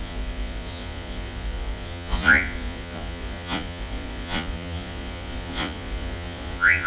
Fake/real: fake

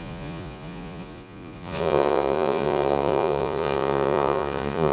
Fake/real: fake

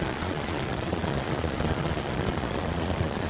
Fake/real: fake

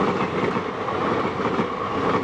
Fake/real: real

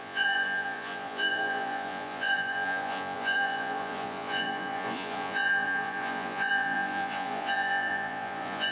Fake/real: fake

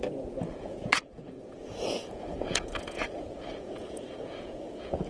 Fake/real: fake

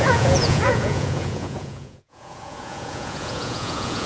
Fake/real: fake